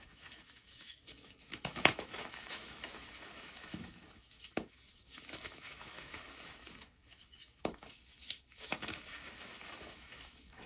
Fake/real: fake